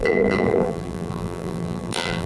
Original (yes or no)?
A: no